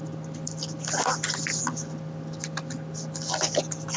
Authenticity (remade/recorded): recorded